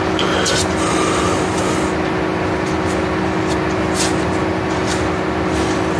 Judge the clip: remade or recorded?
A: recorded